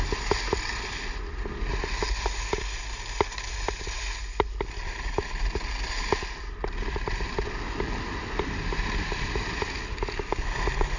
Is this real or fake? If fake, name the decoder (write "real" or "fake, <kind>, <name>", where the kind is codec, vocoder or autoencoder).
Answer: real